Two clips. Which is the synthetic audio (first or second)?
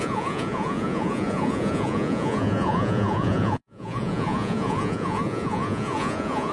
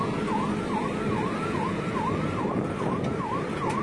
first